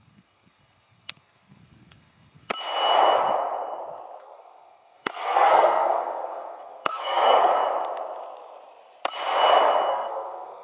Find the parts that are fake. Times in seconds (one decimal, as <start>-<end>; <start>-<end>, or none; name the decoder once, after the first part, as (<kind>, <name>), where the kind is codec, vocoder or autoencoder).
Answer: 0.0-2.5 (codec, SNAC); 4.2-7.5; 9.9-10.6